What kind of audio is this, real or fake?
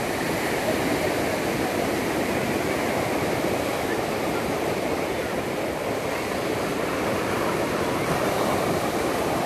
real